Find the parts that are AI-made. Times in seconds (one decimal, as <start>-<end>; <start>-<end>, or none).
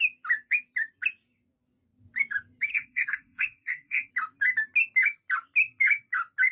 2.7-4.1